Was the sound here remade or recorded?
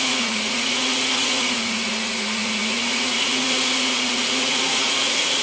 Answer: remade